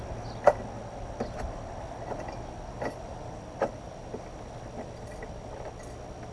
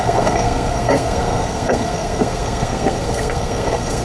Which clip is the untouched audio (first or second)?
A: first